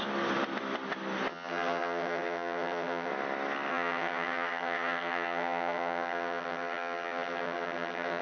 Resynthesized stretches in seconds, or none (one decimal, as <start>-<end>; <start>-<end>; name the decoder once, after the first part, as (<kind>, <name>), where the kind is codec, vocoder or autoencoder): 1.3-3.1 (vocoder, HiFi-GAN); 3.7-8.2